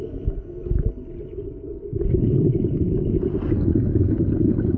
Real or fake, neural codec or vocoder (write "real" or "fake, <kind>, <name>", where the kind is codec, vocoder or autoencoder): real